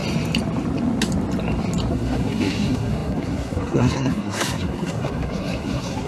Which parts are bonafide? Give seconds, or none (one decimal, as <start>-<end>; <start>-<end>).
0.0-1.9